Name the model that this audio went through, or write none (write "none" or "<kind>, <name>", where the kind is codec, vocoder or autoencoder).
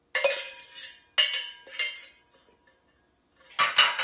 none